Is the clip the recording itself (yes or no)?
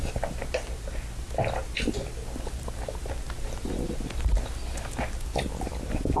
yes